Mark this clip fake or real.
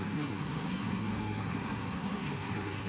fake